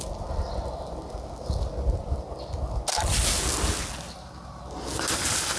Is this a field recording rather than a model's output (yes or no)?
yes